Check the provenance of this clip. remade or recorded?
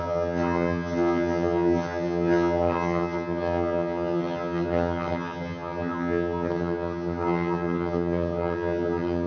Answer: remade